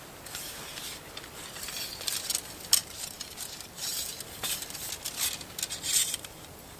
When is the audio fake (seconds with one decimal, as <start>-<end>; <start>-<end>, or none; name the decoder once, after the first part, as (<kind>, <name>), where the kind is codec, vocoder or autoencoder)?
2.8-4.2 (vocoder, BigVGAN v2); 6.0-6.8